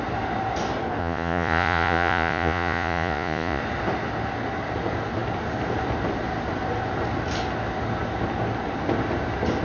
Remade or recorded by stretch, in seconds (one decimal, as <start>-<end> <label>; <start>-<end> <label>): 0.0-1.0 recorded; 1.0-3.6 remade; 3.6-9.6 recorded